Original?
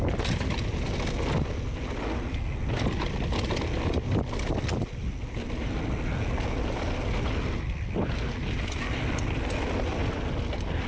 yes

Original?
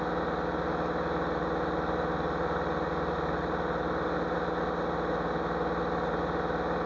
yes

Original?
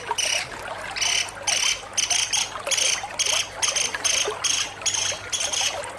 yes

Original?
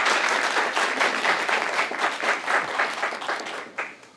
yes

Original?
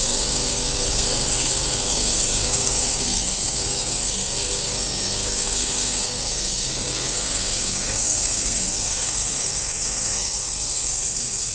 no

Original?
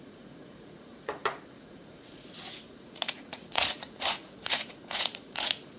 no